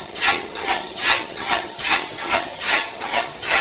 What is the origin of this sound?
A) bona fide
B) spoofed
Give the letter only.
B